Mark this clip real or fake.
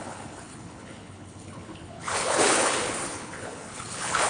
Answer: fake